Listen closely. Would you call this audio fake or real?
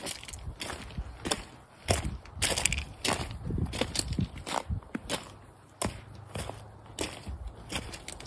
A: real